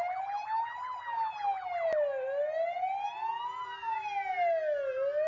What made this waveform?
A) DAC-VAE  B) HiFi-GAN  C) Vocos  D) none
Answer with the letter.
D